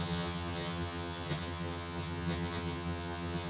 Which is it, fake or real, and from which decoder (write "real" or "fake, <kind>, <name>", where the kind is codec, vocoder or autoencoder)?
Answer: fake, vocoder, HiFi-GAN